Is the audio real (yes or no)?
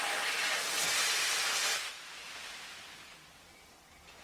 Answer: yes